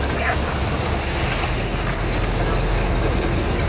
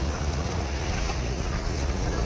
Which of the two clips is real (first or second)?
first